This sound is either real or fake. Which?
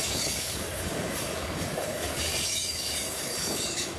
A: fake